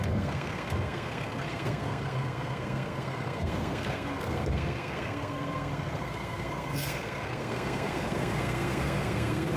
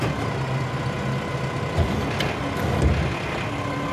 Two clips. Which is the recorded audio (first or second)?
second